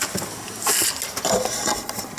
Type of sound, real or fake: real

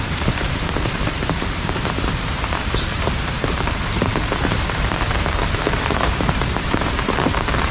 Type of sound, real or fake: fake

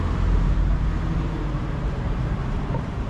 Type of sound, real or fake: fake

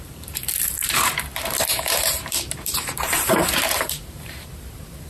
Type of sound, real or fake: fake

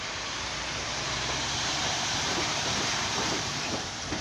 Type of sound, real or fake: fake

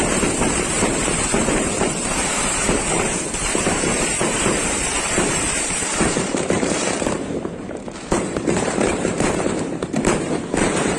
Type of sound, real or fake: fake